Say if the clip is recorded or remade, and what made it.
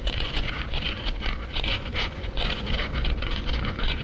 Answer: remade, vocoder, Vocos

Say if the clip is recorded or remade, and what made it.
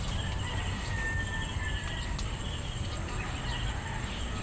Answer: recorded